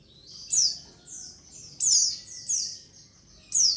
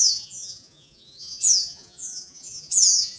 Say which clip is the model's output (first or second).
second